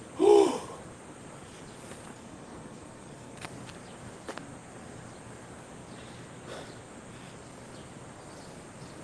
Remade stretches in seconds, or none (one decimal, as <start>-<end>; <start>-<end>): 2.1-3.5